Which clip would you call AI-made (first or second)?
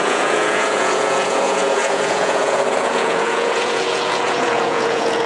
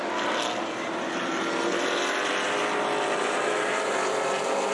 first